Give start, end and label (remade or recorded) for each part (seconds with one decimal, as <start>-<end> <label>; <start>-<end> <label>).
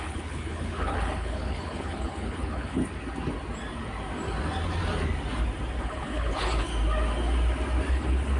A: 0.0-2.8 remade; 2.8-5.8 recorded; 5.8-6.7 remade; 6.7-7.9 recorded; 7.9-8.4 remade